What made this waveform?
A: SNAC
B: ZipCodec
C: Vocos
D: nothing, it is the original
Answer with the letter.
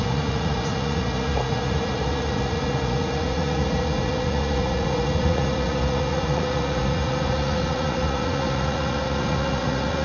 C